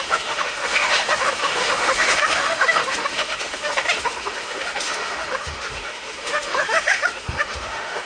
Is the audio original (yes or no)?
no